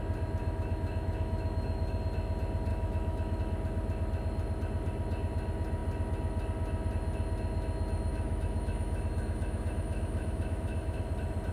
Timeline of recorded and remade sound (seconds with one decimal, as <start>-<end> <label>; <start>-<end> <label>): 0.0-0.4 recorded; 0.4-2.0 remade; 2.0-2.7 recorded; 2.7-3.4 remade; 3.4-8.1 recorded; 8.1-11.0 remade; 11.0-11.5 recorded